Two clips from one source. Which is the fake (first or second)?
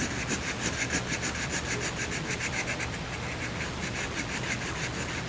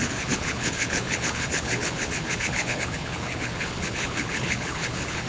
second